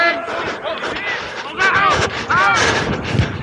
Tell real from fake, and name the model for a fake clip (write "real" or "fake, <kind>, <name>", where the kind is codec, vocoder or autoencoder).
real